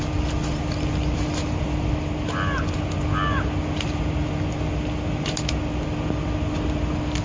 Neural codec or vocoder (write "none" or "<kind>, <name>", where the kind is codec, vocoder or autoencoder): none